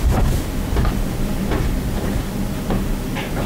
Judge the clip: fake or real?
fake